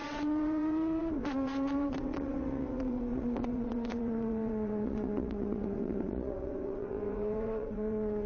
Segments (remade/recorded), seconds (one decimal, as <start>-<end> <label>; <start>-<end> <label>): 0.0-8.3 remade